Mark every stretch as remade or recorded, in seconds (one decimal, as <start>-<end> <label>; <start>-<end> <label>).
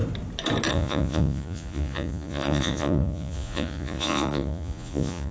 0.0-0.7 recorded; 0.7-5.3 remade